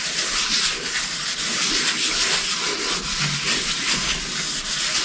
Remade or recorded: recorded